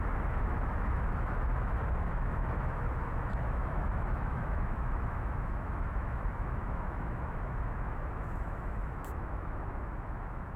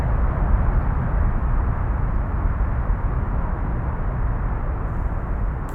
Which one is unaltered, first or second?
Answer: second